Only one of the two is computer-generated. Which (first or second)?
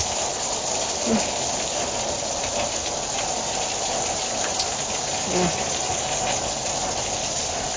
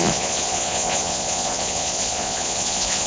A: second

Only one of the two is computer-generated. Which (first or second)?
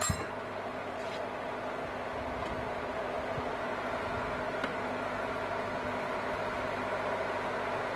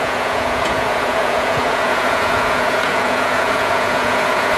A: second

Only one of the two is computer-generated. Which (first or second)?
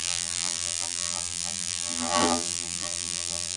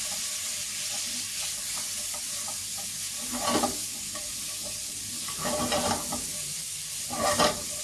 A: first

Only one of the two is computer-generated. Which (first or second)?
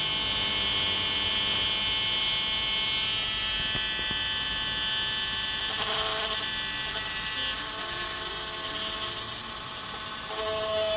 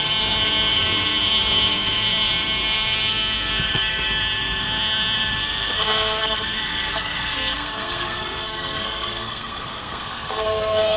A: second